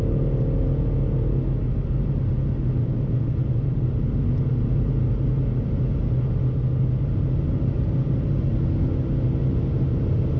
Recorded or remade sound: recorded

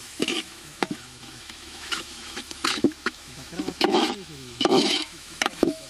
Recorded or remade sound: remade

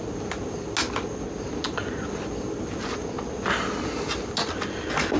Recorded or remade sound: recorded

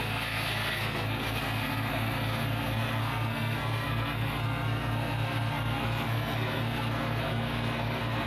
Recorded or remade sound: remade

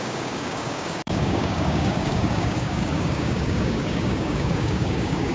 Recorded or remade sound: remade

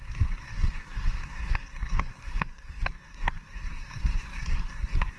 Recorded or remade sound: remade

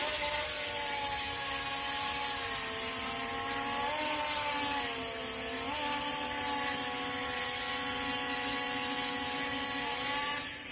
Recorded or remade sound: recorded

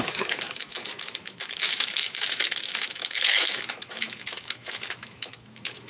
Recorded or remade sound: remade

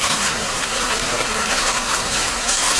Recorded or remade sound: remade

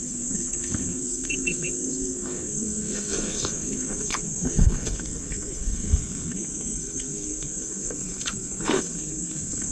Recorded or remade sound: remade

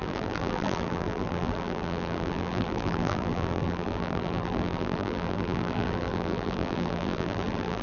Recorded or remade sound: remade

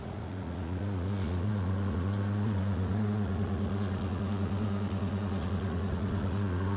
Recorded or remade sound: remade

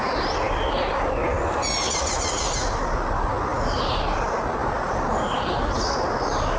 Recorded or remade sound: recorded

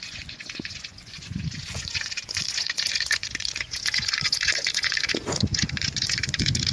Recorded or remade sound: remade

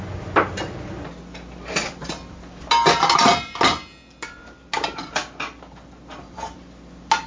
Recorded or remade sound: recorded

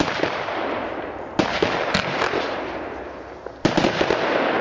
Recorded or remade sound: recorded